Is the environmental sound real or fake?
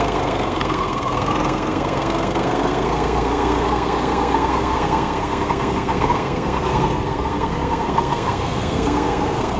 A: fake